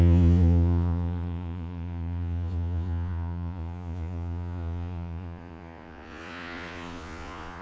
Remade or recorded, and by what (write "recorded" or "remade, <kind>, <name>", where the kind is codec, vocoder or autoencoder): remade, vocoder, Vocos